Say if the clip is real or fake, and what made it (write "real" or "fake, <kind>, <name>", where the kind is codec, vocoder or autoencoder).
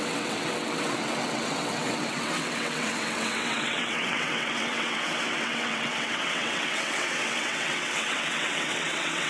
fake, vocoder, WaveNeXt